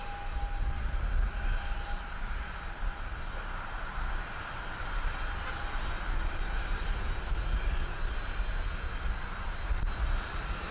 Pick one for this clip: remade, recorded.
recorded